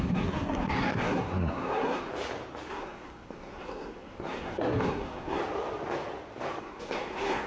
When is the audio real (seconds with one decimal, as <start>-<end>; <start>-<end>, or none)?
2.1-2.7; 5.4-6.6